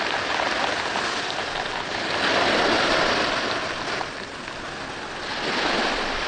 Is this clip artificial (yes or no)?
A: no